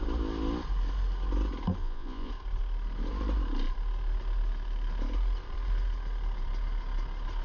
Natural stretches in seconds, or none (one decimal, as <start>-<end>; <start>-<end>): 0.0-1.8; 2.3-7.4